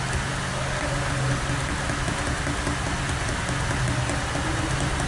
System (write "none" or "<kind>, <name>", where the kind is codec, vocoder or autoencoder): none